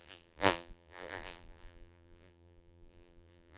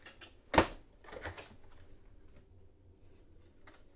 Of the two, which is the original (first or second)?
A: second